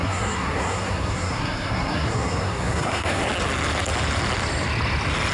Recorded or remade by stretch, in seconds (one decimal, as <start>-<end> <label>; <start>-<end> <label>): 0.0-3.2 remade; 3.2-5.3 recorded